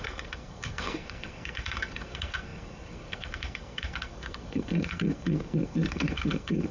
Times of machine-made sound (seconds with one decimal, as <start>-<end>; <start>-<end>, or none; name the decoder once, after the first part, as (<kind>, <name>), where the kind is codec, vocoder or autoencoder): 0.0-6.7 (codec, SNAC)